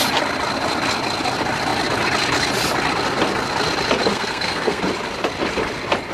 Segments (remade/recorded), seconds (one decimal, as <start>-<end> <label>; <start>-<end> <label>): 0.0-4.1 recorded; 4.1-4.8 remade; 4.8-6.1 recorded

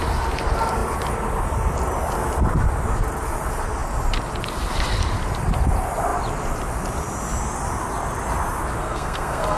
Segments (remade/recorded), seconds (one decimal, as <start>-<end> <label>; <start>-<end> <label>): 0.0-8.8 recorded; 8.8-9.6 remade

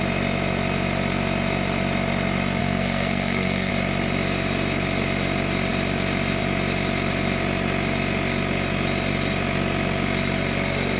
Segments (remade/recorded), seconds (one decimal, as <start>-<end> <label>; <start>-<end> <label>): 0.0-2.6 recorded; 2.6-3.7 remade; 3.7-11.0 recorded

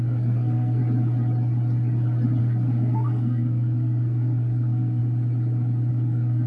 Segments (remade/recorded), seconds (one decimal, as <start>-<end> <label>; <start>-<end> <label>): 0.0-0.8 remade; 0.8-2.4 recorded; 2.4-5.0 remade; 5.0-5.9 recorded; 5.9-6.5 remade

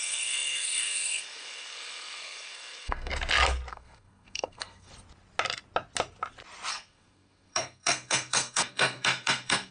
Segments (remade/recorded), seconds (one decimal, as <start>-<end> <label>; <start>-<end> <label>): 0.0-3.1 remade; 3.1-3.7 recorded; 3.7-4.9 remade; 4.9-6.7 recorded; 6.7-9.7 remade

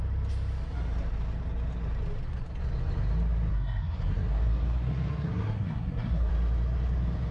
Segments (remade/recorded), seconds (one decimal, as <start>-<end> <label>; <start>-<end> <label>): 0.0-3.5 recorded; 3.5-6.3 remade; 6.3-7.3 recorded